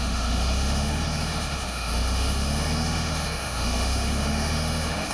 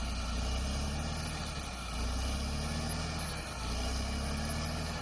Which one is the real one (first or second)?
second